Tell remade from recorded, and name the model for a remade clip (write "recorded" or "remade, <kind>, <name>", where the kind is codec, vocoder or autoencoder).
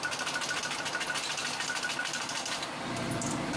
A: recorded